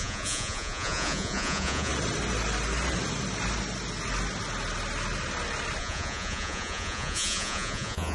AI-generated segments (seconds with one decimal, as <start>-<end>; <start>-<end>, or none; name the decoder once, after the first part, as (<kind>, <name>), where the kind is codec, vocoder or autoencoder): 0.0-1.9 (vocoder, Vocos); 5.8-8.1